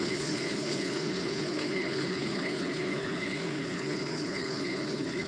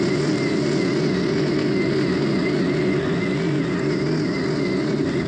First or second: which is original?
second